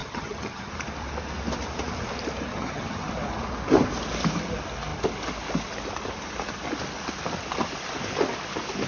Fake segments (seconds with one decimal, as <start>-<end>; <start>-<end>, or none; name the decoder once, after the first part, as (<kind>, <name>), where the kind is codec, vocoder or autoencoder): 0.0-0.7 (vocoder, HiFi-GAN); 2.5-3.1